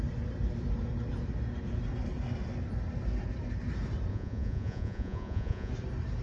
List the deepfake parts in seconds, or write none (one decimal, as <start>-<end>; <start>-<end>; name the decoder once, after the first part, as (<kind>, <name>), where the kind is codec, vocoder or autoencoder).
4.1-5.7 (vocoder, Vocos)